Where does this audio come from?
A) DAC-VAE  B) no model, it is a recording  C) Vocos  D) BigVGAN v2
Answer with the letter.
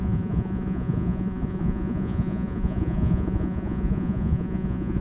C